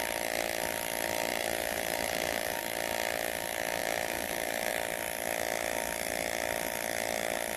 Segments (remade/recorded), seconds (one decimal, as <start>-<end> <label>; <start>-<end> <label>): 0.0-1.3 recorded; 1.3-2.6 remade; 2.6-3.8 recorded; 3.8-4.7 remade; 4.7-7.6 recorded